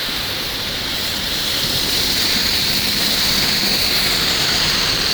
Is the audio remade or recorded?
remade